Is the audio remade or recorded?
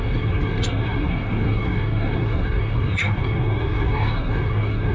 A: remade